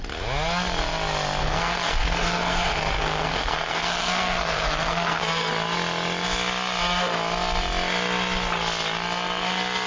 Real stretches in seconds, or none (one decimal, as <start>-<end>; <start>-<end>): 0.0-1.4; 5.5-9.9